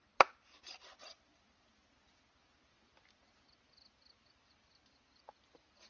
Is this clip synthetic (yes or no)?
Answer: no